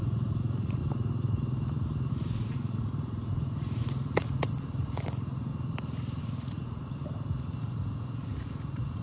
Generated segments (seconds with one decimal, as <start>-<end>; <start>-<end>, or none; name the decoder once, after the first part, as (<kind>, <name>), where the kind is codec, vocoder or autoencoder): 0.0-0.8 (vocoder, Vocos); 2.1-5.5; 6.2-7.0; 7.6-9.0